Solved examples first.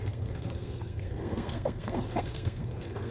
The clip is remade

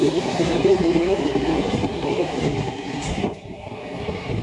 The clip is remade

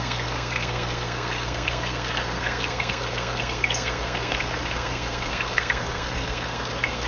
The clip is remade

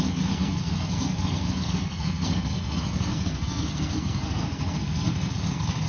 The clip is remade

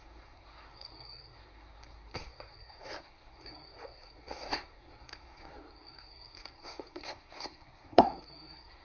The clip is remade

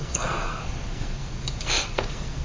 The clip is remade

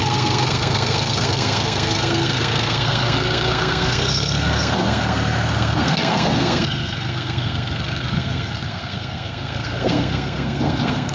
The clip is remade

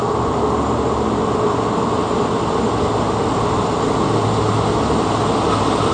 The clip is recorded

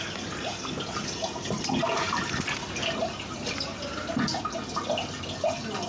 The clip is recorded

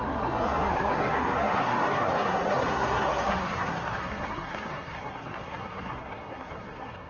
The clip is remade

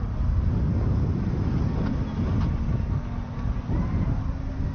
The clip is recorded